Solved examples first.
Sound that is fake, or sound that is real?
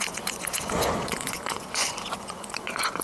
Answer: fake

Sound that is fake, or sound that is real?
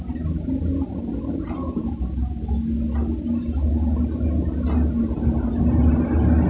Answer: real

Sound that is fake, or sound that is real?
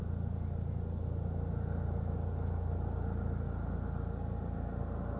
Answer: real